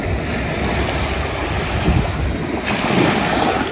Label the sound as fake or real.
real